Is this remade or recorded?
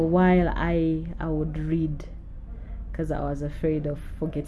recorded